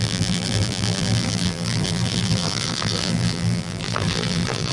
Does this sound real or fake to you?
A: fake